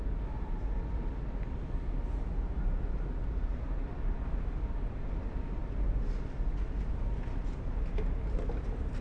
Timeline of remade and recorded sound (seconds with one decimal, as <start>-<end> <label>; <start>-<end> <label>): 0.0-9.0 recorded